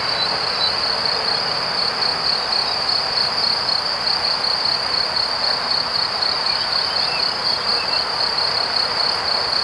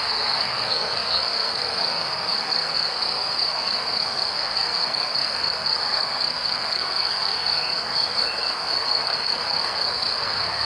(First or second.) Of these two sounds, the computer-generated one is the second